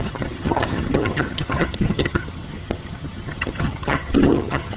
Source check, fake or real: fake